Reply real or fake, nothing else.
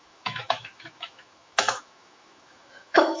fake